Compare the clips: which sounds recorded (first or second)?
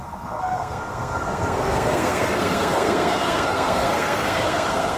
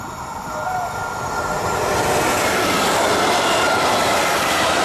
second